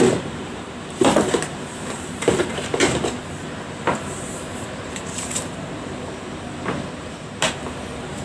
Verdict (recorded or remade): remade